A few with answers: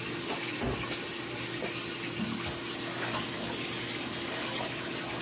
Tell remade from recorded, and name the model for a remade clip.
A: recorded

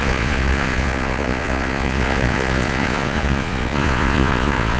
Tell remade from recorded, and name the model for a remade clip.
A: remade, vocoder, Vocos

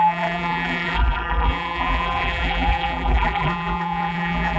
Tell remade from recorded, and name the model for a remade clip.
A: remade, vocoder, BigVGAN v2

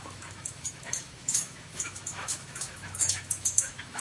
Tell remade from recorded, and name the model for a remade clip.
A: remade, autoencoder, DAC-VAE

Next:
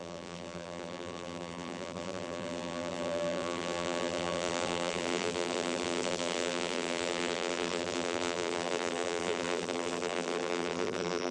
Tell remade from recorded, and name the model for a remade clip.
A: remade, vocoder, BigVGAN v2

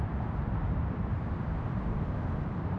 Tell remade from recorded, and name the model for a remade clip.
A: remade, vocoder, BigVGAN v2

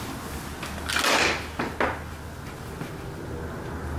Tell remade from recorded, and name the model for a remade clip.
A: recorded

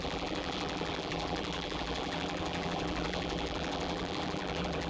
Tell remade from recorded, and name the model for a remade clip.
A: remade, vocoder, BigVGAN v2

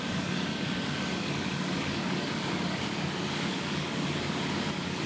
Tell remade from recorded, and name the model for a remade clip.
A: remade, codec, DAC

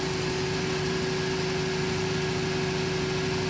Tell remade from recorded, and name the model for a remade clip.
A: recorded